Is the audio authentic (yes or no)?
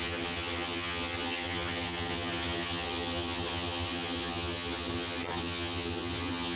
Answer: no